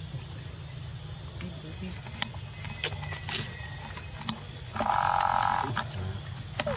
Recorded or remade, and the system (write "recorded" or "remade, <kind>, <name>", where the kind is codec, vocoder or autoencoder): recorded